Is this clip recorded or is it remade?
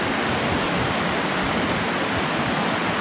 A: recorded